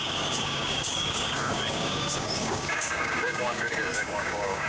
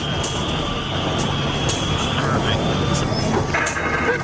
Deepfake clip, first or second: first